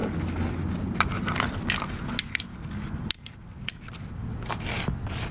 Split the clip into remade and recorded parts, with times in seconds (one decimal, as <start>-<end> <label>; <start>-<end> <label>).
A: 0.0-5.3 recorded